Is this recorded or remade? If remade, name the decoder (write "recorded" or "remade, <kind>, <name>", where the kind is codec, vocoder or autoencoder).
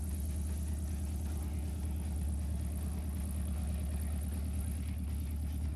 recorded